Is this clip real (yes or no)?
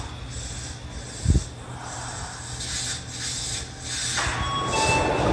yes